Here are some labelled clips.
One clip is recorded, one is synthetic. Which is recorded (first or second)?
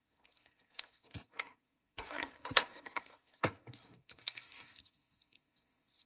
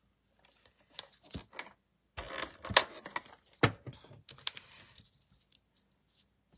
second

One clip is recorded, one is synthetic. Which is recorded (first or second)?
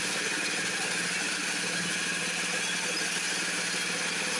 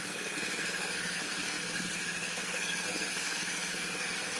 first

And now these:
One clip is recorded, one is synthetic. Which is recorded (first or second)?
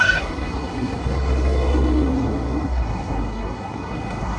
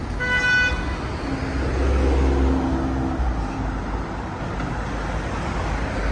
second